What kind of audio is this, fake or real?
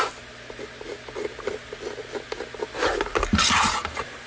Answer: real